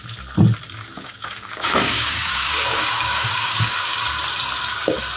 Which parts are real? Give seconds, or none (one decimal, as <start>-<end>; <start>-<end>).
0.0-0.9; 4.0-5.2